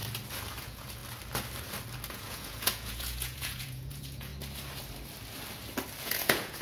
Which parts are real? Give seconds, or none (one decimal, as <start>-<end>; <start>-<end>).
0.0-0.6; 1.0-2.1; 4.3-6.0